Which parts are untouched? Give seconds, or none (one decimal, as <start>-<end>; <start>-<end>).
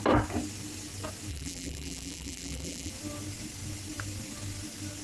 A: 0.0-1.3; 2.9-5.0